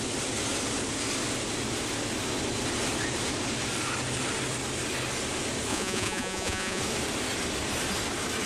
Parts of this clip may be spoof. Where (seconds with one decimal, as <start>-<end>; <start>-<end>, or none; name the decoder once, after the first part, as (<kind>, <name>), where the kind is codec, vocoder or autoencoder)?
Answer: 5.7-6.8 (vocoder, Vocos)